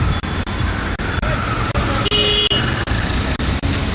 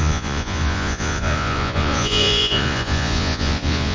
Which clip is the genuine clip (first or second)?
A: first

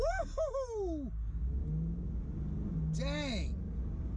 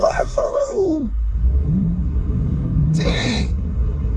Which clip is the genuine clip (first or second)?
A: first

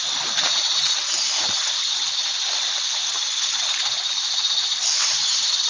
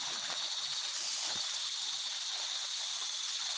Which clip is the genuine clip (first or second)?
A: first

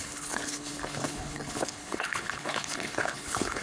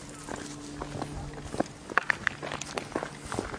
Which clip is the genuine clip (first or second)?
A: second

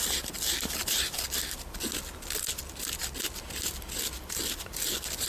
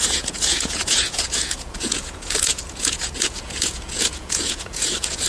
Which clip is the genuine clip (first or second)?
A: first